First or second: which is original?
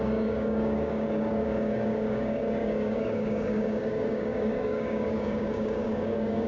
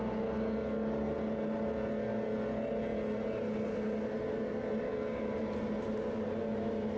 second